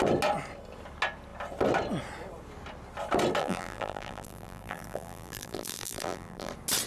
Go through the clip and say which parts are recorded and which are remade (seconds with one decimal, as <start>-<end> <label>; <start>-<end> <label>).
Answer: 0.0-3.4 recorded; 3.4-6.5 remade; 6.5-6.9 recorded